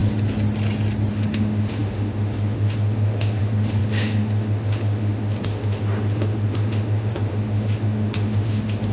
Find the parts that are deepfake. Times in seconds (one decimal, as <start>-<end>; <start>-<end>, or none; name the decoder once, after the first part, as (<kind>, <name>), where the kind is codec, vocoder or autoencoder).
1.1-8.9 (autoencoder, DAC-VAE)